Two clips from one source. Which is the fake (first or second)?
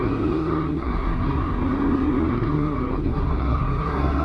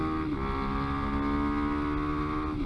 first